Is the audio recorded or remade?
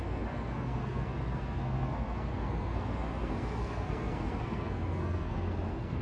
remade